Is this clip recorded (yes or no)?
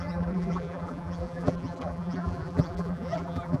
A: no